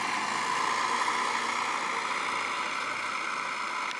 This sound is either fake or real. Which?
real